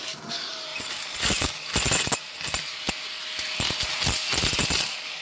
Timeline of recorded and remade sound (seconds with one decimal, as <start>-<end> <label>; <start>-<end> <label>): 0.0-1.7 remade; 1.7-4.8 recorded; 4.8-5.2 remade